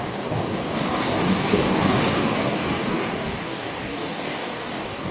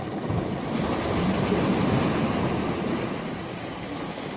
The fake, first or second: first